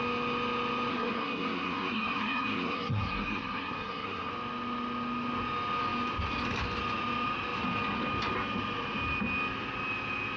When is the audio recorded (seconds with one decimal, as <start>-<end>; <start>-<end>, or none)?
0.0-0.9; 4.3-10.4